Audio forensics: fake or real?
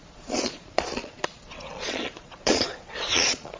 fake